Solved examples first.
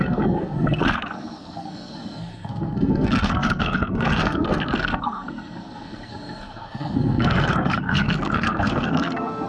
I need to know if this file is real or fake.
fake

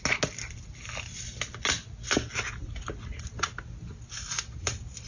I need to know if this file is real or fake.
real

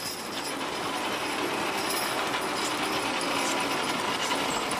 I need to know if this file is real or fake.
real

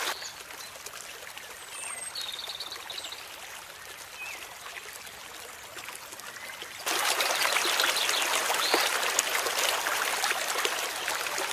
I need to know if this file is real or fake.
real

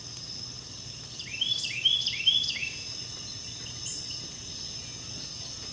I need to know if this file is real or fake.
real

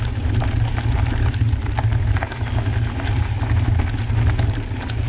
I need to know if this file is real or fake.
real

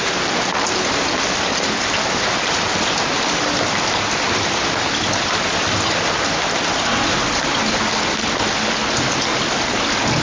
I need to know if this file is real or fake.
real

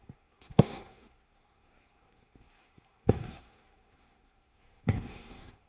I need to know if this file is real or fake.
fake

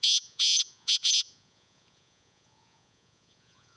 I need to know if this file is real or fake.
fake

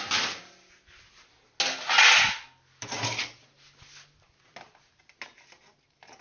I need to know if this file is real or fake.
real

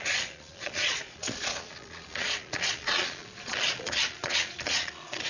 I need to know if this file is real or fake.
fake